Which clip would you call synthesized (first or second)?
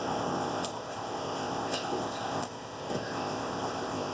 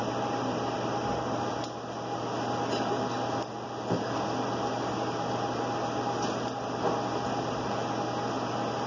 first